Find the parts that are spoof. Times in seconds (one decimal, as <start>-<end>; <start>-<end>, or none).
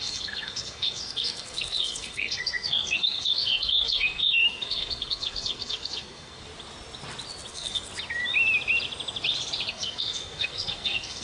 0.0-6.5; 7.5-7.9; 9.7-11.2